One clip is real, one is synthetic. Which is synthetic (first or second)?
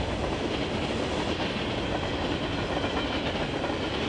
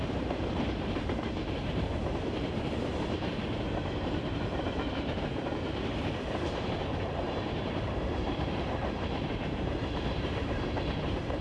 second